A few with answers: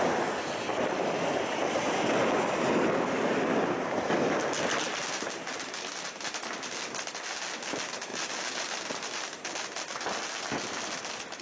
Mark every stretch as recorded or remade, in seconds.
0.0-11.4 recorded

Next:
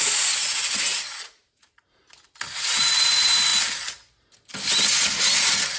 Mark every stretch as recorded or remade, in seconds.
0.0-0.9 recorded; 0.9-2.0 remade; 2.0-5.8 recorded

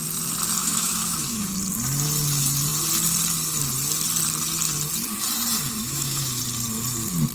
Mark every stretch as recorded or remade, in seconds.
0.0-0.6 recorded; 0.6-1.5 remade; 1.5-5.8 recorded; 5.8-6.4 remade; 6.4-7.3 recorded

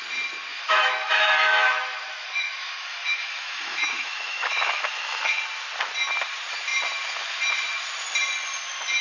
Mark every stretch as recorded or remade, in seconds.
0.0-0.5 recorded; 0.5-5.4 remade; 5.4-9.0 recorded